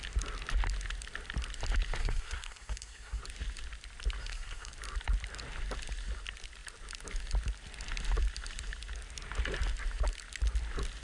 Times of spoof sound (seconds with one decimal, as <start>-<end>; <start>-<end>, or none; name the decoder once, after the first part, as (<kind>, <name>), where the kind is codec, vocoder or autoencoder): 2.0-3.2 (codec, SNAC); 4.2-4.7